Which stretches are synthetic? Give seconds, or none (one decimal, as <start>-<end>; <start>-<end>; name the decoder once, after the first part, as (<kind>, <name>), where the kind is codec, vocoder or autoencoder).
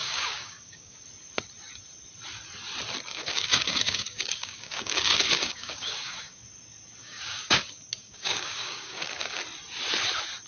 0.0-1.0 (codec, DAC); 3.1-6.4; 7.0-9.4